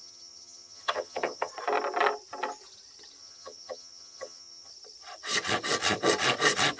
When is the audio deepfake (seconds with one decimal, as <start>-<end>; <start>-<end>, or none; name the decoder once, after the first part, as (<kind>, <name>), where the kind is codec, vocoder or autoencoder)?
0.0-1.5 (vocoder, HiFi-GAN); 3.2-4.7